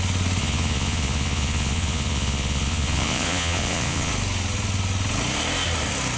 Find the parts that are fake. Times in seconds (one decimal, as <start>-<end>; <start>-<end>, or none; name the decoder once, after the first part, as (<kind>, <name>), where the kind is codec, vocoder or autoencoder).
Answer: 0.4-4.1 (vocoder, Vocos)